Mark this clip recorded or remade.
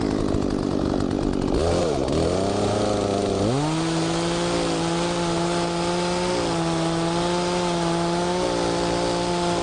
recorded